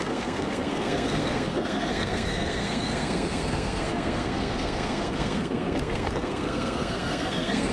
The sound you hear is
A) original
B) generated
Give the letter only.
B